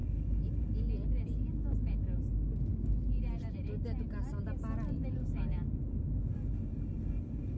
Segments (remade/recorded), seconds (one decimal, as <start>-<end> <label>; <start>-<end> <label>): 0.0-7.6 recorded